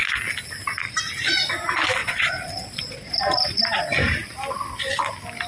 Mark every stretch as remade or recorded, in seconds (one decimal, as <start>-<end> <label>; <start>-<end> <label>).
0.0-2.0 recorded; 2.0-3.6 remade; 3.6-5.5 recorded